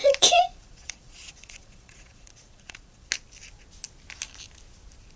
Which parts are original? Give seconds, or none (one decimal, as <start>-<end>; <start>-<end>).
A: 3.1-5.2